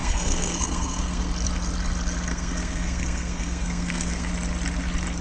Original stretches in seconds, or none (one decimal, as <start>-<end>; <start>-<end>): 1.3-2.3; 4.3-5.2